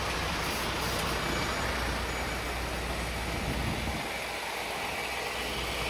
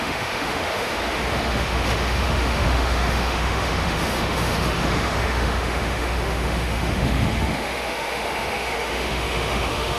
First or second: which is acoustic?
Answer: first